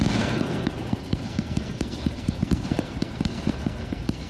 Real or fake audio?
fake